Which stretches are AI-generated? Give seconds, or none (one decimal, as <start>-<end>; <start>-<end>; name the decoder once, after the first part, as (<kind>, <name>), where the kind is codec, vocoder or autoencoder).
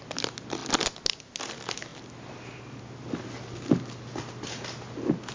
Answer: none